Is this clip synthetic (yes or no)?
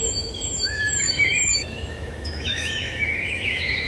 yes